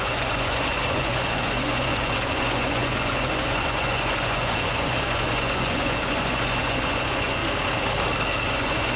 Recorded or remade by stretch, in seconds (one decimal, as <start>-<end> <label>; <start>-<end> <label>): 0.0-7.4 remade; 7.4-8.5 recorded; 8.5-9.0 remade